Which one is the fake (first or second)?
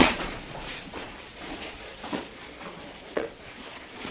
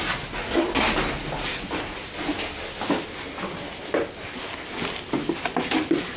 first